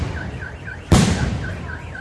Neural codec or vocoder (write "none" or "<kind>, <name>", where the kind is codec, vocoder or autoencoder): vocoder, BigVGAN v2